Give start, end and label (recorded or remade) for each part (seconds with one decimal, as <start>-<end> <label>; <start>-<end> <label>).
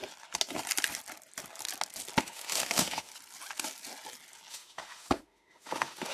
0.0-2.2 recorded; 2.2-3.1 remade; 3.1-4.5 recorded; 4.5-6.1 remade